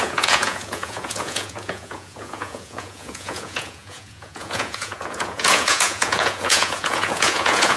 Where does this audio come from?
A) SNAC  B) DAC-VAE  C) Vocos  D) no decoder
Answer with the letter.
C